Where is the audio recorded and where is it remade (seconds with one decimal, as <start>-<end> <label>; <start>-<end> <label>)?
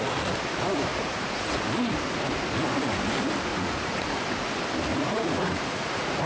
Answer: 0.0-0.9 recorded; 0.9-1.5 remade; 1.5-3.5 recorded; 3.5-4.2 remade; 4.2-4.9 recorded; 4.9-6.3 remade